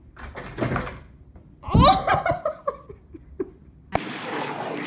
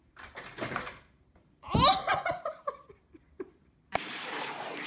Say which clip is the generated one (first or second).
second